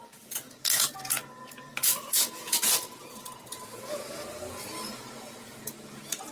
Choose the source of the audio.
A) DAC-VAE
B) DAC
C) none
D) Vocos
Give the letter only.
D